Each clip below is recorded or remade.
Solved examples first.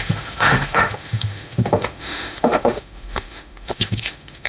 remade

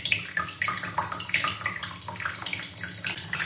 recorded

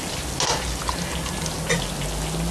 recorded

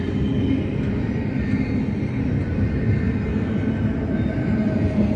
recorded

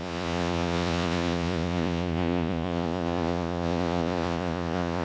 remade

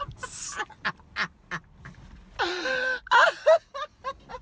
recorded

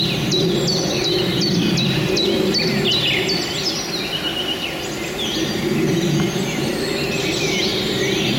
recorded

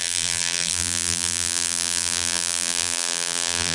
remade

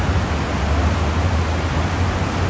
recorded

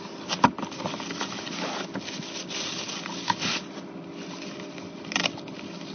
recorded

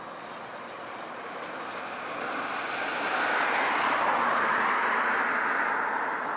recorded